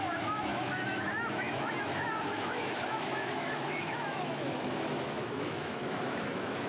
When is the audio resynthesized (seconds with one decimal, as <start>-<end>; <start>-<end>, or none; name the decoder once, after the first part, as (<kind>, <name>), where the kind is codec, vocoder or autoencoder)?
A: 0.0-6.7 (autoencoder, DAC-VAE)